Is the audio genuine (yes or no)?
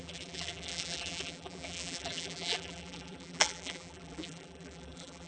no